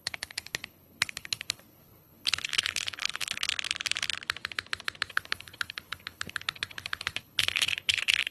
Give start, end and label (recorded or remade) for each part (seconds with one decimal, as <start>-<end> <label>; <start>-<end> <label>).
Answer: 0.0-3.5 remade; 3.5-5.1 recorded; 5.1-8.3 remade